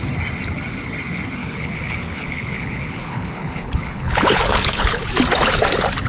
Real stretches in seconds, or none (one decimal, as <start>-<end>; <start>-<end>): 0.0-1.4; 5.1-6.1

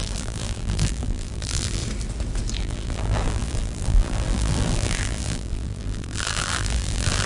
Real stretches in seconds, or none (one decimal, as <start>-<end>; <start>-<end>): 1.8-2.6

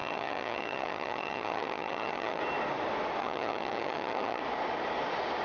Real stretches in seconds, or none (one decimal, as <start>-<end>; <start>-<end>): 2.4-3.2; 4.4-5.4

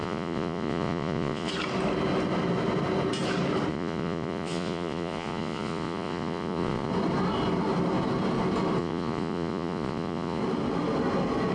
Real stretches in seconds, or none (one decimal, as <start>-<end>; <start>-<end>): 1.5-3.7; 6.9-8.8; 10.4-11.5

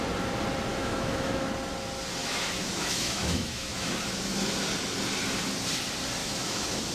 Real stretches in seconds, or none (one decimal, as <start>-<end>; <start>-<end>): 0.0-0.7; 1.5-2.2; 4.5-6.2

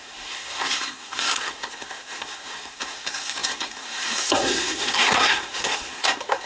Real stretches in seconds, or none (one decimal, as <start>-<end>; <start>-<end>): none